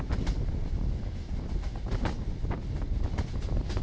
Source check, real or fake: real